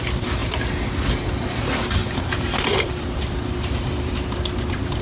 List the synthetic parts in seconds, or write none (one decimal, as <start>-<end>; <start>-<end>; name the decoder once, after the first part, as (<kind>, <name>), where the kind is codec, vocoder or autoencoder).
2.0-5.0 (vocoder, BigVGAN v2)